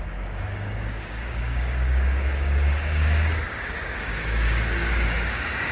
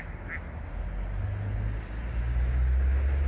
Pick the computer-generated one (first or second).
first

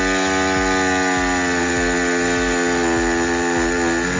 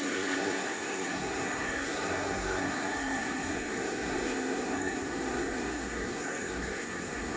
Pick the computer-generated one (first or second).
second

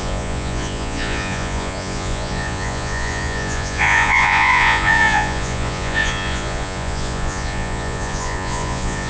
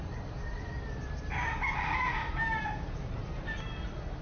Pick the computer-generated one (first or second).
first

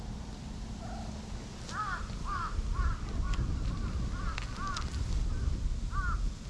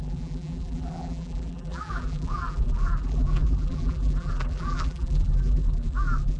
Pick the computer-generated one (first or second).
second